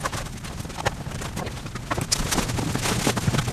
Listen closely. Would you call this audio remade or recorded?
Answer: recorded